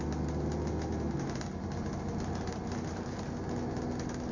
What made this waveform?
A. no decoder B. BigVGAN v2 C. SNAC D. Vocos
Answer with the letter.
A